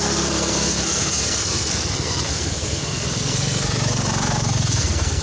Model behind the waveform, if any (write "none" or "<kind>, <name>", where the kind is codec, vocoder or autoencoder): codec, SNAC